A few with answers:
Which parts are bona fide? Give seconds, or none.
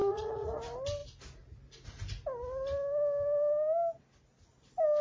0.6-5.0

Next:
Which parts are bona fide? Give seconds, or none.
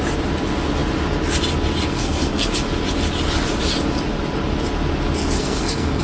0.0-1.9; 2.5-5.2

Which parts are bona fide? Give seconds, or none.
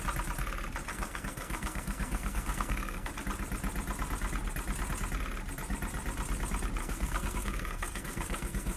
0.0-0.9; 3.1-6.8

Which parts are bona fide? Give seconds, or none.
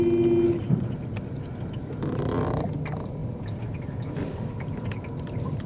0.0-5.7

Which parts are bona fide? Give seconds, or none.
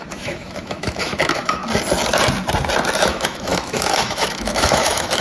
1.6-3.0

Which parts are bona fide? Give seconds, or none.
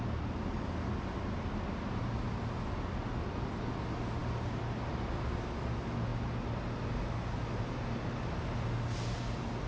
0.0-9.7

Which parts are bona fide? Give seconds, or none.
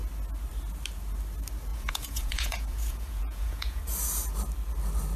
0.0-1.7; 3.8-5.2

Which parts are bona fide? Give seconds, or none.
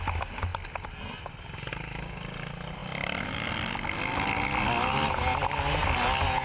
0.0-6.4